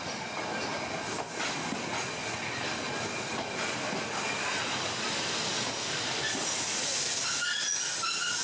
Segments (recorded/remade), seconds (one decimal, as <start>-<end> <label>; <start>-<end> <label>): 0.0-8.4 recorded